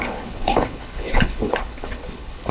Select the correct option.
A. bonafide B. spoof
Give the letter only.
B